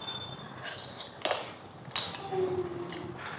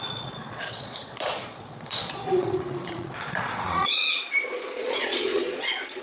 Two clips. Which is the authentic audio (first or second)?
first